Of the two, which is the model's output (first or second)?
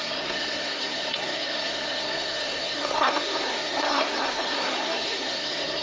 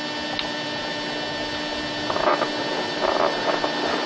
first